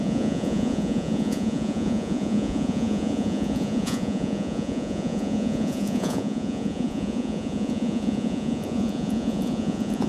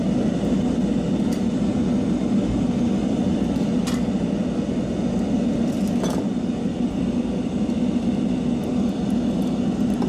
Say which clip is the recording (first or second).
second